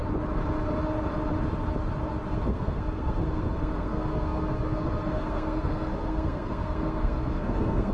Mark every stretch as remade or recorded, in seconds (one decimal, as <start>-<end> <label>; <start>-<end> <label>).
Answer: 0.0-2.3 recorded; 2.3-7.9 remade